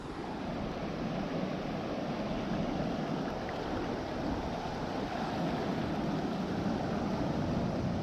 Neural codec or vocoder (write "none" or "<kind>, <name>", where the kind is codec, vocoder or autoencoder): none